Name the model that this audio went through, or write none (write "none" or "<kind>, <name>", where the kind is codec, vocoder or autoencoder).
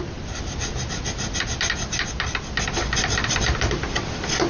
none